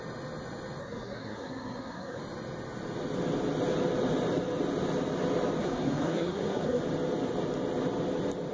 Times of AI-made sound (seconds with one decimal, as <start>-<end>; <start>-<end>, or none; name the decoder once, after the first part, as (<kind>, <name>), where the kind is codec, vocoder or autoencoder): 0.8-2.2 (codec, SNAC); 5.6-6.8